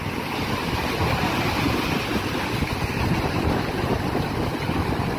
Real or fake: real